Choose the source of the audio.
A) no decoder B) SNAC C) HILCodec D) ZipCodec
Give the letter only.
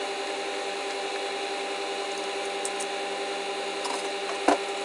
A